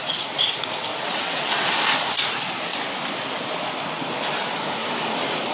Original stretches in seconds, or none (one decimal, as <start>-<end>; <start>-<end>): 0.0-0.9; 1.8-5.5